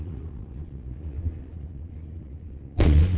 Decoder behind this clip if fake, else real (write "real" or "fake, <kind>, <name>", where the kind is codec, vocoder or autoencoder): fake, vocoder, Vocos